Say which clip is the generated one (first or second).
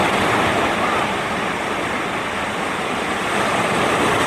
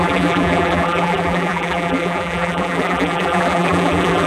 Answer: second